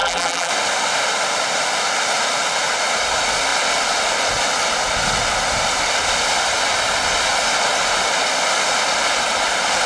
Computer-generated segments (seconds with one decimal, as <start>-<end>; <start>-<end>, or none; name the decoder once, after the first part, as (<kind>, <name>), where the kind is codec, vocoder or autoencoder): 0.0-0.5 (vocoder, BigVGAN v2)